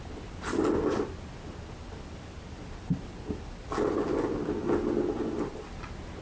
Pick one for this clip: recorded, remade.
recorded